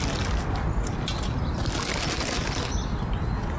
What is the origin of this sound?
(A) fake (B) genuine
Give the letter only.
B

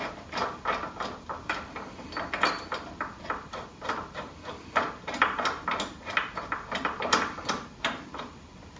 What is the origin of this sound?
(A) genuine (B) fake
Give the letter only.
A